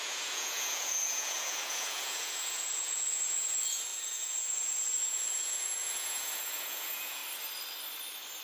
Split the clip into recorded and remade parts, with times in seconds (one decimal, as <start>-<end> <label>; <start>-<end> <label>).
0.0-7.2 remade; 7.2-8.4 recorded